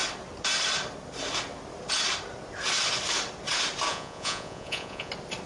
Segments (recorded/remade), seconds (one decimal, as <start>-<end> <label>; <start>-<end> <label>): 0.0-3.9 recorded; 3.9-5.1 remade; 5.1-5.5 recorded